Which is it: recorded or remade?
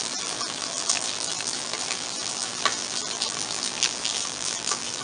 remade